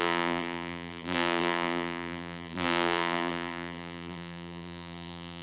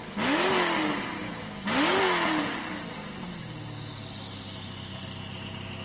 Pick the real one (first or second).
second